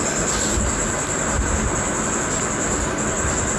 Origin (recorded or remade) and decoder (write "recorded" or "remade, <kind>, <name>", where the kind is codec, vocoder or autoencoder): recorded